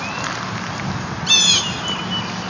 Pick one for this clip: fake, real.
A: real